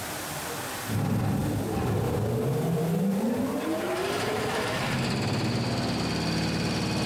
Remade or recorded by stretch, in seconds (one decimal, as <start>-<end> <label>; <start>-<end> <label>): 0.0-7.1 recorded